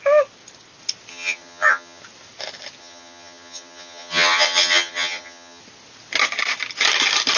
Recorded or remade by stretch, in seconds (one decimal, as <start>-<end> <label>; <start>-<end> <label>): 0.0-1.1 recorded; 1.1-2.0 remade; 2.0-2.8 recorded; 2.8-5.6 remade; 5.6-7.4 recorded